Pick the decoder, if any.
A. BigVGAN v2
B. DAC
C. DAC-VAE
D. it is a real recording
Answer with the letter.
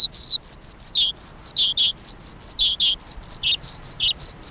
D